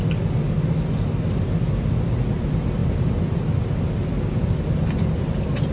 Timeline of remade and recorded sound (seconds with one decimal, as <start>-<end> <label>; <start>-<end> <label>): 0.0-5.7 recorded